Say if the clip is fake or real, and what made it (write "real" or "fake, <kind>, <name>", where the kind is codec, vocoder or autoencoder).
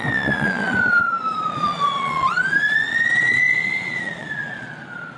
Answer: fake, vocoder, Vocos